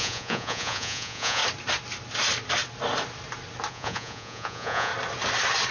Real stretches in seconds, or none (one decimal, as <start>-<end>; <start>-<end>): 1.4-3.7; 4.9-5.7